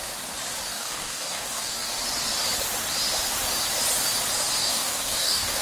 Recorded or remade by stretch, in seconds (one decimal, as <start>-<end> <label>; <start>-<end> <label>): 0.0-0.7 recorded; 0.7-2.0 remade; 2.0-4.6 recorded; 4.6-5.6 remade